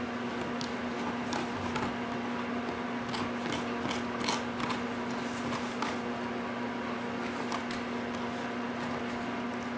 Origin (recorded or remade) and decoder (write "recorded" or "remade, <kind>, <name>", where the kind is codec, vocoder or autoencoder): recorded